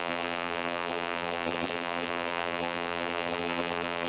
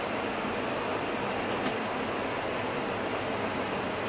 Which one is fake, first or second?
first